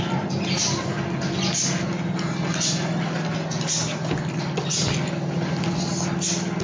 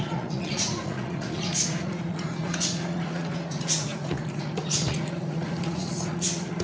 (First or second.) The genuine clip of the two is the first